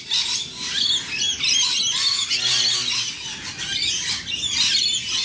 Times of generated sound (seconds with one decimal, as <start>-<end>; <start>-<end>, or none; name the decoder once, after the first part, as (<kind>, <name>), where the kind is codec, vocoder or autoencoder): none